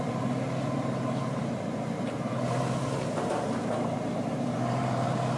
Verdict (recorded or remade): remade